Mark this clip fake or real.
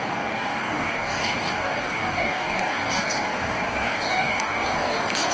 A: fake